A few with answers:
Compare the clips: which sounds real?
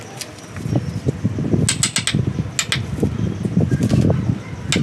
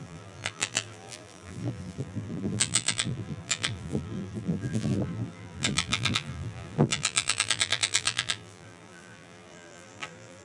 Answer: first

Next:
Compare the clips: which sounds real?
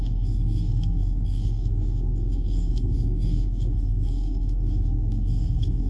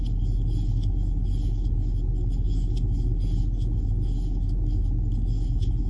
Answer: second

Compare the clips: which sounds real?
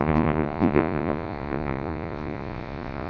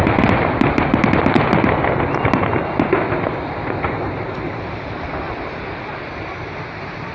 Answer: second